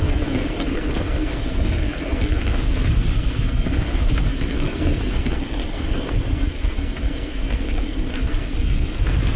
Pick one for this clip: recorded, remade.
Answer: remade